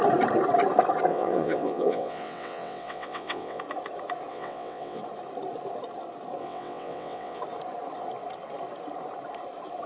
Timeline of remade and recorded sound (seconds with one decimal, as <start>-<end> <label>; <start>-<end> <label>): 0.0-1.1 recorded; 1.1-3.6 remade; 3.6-4.3 recorded; 4.3-5.0 remade; 5.0-6.4 recorded; 6.4-7.4 remade; 7.4-9.9 recorded